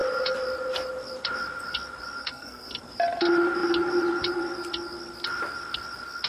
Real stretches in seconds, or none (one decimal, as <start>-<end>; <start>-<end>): 0.0-2.2; 2.7-6.3